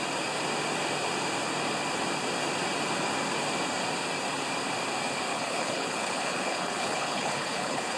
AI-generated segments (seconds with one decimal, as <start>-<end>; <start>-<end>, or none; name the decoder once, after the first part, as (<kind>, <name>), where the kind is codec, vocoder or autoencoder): 5.3-8.0 (codec, HILCodec)

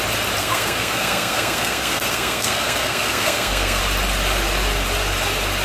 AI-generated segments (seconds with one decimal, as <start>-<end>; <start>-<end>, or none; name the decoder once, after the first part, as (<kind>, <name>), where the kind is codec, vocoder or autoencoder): 0.4-3.8 (codec, SNAC)